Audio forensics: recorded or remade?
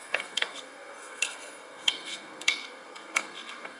remade